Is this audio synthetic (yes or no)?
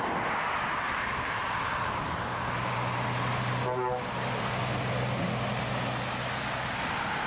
no